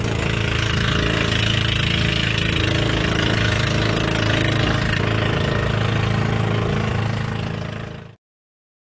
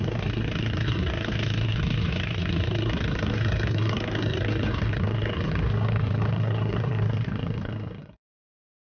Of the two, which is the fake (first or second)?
second